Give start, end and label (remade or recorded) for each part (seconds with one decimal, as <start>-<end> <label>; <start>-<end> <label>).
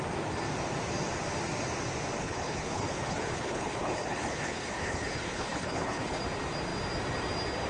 0.0-2.2 recorded; 2.2-6.2 remade; 6.2-7.7 recorded